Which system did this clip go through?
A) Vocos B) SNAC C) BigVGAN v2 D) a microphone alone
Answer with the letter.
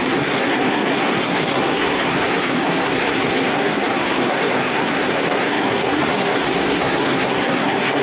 B